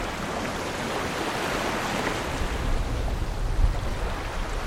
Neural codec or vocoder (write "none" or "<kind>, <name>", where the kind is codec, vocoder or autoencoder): none